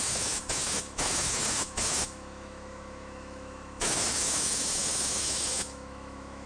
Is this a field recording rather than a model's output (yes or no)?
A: no